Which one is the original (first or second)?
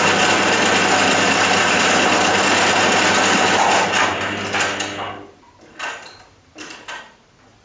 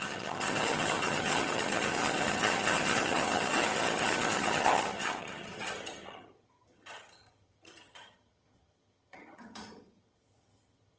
first